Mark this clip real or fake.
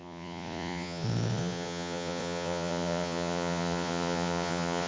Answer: fake